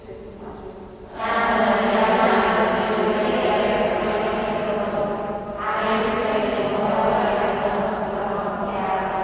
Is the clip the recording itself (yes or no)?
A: yes